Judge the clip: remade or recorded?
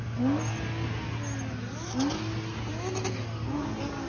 recorded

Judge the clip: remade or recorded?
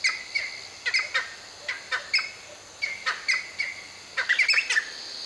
recorded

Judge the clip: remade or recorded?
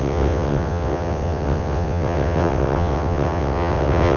remade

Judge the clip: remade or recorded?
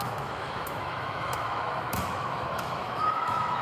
remade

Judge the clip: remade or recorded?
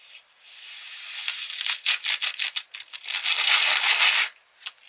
recorded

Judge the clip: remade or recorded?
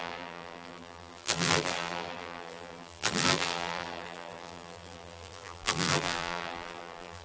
remade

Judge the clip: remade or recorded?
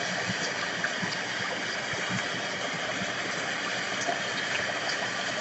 recorded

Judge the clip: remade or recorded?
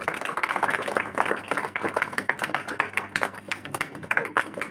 remade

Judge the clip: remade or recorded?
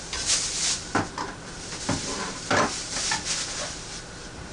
recorded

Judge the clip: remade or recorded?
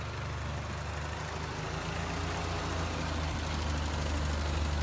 recorded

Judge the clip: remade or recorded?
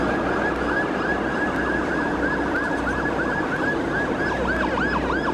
recorded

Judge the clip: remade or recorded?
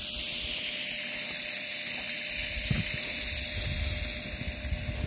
recorded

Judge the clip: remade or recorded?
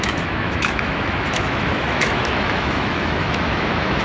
remade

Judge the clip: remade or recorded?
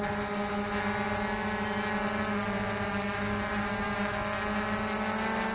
recorded